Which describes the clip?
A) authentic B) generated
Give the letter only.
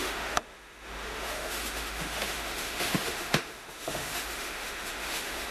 B